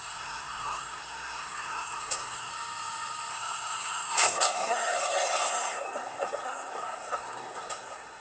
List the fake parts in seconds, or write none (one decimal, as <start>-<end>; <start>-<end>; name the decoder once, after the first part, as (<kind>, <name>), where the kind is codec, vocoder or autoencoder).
0.0-2.5 (codec, SNAC); 3.3-8.2